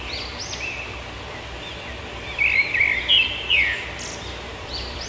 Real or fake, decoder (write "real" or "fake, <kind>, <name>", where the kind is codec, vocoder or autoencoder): real